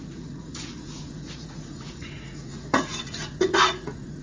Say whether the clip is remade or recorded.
remade